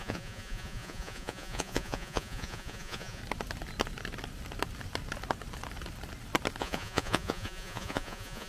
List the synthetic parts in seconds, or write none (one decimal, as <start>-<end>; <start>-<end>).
0.0-3.2; 6.6-8.5